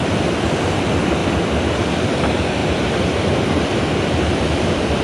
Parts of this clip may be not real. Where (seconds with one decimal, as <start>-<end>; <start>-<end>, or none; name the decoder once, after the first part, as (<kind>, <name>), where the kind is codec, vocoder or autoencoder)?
none